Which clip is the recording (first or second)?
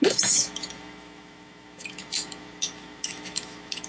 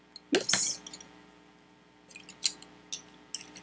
second